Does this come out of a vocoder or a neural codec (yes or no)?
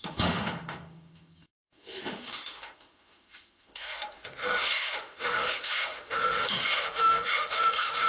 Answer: yes